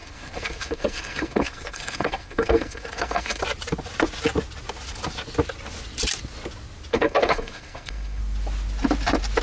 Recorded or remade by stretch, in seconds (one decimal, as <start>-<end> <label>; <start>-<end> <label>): 0.0-3.4 remade; 3.4-6.9 recorded; 6.9-8.2 remade; 8.2-9.4 recorded